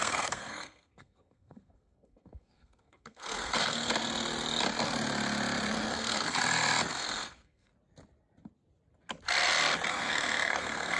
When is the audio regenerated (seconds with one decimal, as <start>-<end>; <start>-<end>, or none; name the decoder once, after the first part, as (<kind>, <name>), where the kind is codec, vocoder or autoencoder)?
0.0-3.9 (codec, SNAC); 5.7-6.4; 6.9-7.7; 9.9-11.0